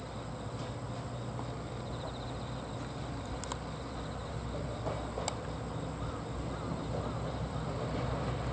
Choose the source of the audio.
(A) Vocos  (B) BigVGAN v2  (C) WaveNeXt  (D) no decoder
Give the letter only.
D